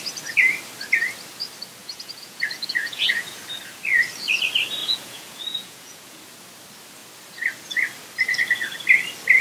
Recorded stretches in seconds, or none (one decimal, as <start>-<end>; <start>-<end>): 0.0-1.8; 3.4-4.8; 6.2-9.4

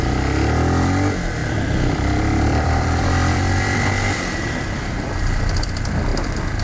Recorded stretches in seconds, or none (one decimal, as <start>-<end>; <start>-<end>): 0.0-1.4; 5.4-6.1

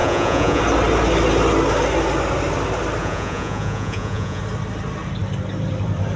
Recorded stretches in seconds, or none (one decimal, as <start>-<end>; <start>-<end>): 0.6-3.0; 4.4-6.2

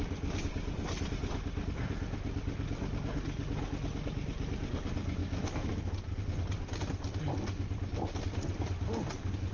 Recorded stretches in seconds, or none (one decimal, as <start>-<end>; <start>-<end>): 0.0-5.2; 5.9-9.5

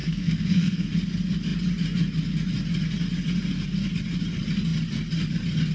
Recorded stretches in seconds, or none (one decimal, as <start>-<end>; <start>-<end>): 0.9-5.7